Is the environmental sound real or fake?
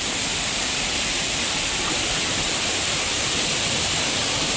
real